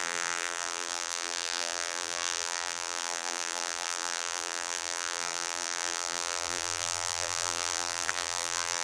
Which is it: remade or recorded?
remade